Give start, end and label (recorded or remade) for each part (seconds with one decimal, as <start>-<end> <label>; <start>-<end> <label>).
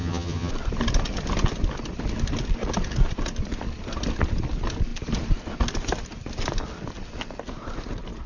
0.0-0.5 remade; 0.5-8.3 recorded